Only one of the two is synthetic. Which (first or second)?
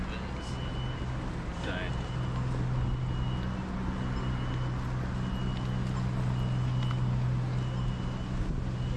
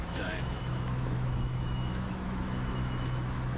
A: second